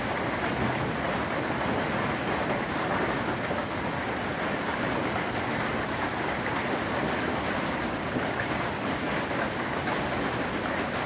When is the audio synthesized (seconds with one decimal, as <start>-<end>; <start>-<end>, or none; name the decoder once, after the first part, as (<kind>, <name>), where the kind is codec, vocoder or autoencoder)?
3.6-4.7 (vocoder, BigVGAN v2)